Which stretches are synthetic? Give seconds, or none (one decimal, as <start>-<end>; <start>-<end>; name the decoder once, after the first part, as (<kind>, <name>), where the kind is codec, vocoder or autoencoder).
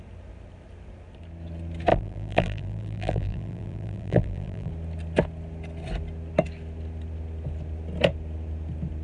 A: 1.9-4.7 (vocoder, BigVGAN v2)